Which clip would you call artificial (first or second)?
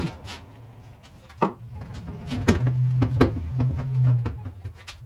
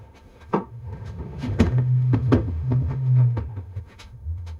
second